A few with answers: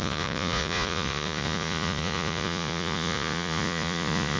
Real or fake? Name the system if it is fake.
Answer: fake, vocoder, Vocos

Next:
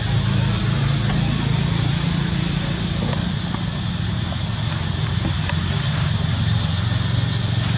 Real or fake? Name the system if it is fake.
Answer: real